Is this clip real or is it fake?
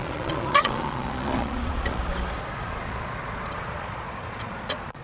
fake